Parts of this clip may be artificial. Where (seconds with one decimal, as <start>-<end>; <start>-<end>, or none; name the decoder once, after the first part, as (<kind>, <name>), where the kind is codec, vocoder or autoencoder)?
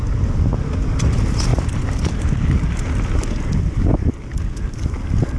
none